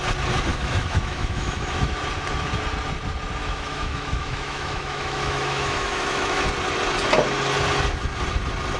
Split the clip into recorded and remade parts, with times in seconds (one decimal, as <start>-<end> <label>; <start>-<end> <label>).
0.0-0.5 recorded; 0.5-1.9 remade; 1.9-3.4 recorded; 3.4-6.5 remade; 6.5-8.8 recorded